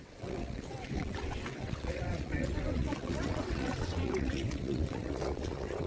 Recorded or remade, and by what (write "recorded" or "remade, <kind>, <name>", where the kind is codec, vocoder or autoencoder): remade, vocoder, WaveNeXt